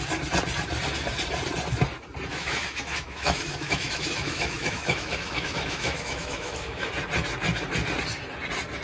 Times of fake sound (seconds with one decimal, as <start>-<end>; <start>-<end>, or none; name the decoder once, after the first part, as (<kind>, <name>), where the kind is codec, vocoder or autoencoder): 2.3-6.9 (autoencoder, DAC-VAE)